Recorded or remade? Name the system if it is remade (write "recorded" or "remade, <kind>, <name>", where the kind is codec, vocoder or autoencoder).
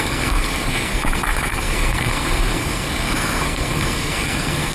remade, codec, SNAC